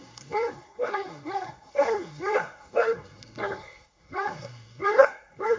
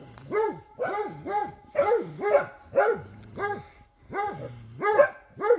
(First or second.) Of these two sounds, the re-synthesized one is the first